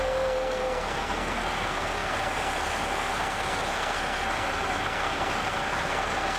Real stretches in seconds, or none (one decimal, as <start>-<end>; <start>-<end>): none